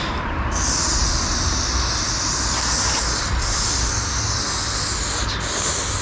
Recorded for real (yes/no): yes